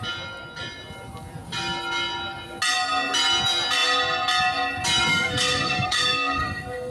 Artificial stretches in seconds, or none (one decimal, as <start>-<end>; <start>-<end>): 5.1-6.9